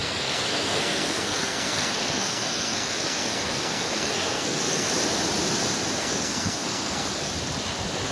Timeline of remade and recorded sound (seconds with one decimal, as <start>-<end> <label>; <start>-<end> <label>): 0.0-4.9 remade; 4.9-6.0 recorded; 6.0-7.3 remade; 7.3-8.1 recorded